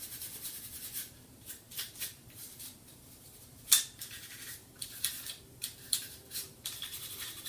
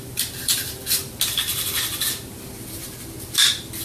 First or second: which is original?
second